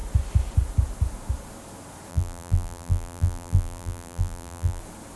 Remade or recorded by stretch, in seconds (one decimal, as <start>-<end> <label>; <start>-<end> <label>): 0.0-2.1 recorded; 2.1-4.8 remade; 4.8-5.2 recorded

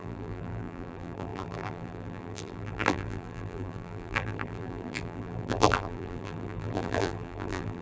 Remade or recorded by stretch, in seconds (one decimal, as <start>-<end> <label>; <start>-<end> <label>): 0.0-7.8 remade

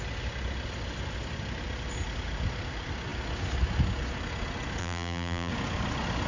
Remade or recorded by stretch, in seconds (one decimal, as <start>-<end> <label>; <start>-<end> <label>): 0.0-4.8 recorded; 4.8-5.5 remade; 5.5-6.3 recorded

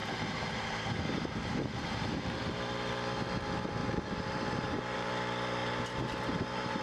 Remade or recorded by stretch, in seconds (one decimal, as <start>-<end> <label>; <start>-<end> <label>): 0.0-2.4 remade; 2.4-3.8 recorded; 3.8-5.1 remade; 5.1-5.6 recorded; 5.6-6.8 remade

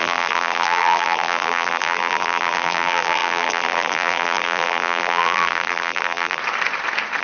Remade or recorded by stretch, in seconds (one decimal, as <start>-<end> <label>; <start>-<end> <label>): 0.0-6.4 remade; 6.4-7.2 recorded

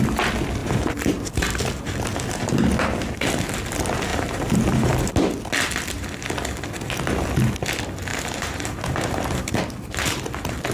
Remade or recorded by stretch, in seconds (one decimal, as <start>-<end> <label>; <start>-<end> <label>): 0.0-0.6 recorded; 0.6-1.1 remade; 1.1-4.1 recorded; 4.1-5.1 remade; 5.1-8.1 recorded; 8.1-9.6 remade; 9.6-10.7 recorded